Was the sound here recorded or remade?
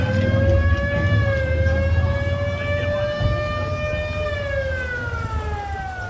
recorded